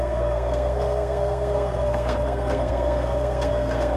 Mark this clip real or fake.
fake